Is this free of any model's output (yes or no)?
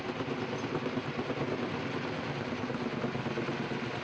yes